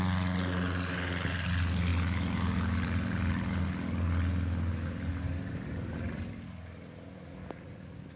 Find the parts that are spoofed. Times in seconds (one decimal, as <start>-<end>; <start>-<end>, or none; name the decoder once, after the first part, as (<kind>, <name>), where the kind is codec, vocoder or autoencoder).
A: none